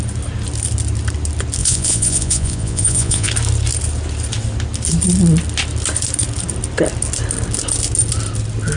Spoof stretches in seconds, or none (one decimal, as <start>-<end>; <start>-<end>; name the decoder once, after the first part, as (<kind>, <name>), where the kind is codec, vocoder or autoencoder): 1.6-3.3 (vocoder, Vocos)